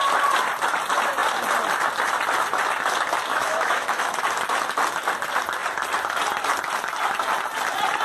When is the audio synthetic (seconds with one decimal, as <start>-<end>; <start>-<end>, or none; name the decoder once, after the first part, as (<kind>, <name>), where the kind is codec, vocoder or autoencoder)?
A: 3.3-4.2 (autoencoder, DAC-VAE)